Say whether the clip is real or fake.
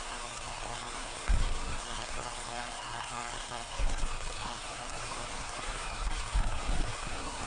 fake